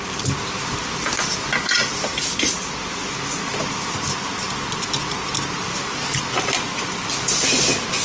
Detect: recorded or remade recorded